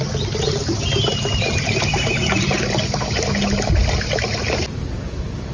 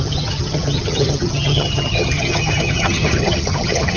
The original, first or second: first